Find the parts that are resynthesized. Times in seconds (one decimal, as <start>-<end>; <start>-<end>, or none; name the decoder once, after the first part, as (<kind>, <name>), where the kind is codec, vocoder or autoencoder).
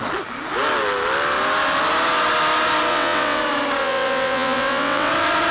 2.9-3.4 (vocoder, WaveNeXt); 3.8-5.1